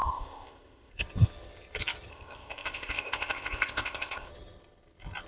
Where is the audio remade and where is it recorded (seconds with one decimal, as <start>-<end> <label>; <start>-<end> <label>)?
0.0-0.9 remade; 0.9-2.1 recorded; 2.1-4.3 remade; 4.3-5.3 recorded